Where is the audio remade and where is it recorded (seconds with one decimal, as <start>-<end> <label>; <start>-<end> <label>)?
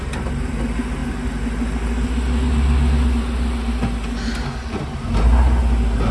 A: 0.0-6.1 recorded